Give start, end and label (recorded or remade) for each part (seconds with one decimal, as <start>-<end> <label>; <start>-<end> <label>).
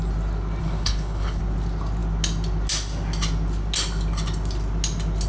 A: 0.0-0.6 recorded; 0.6-1.4 remade; 1.4-5.3 recorded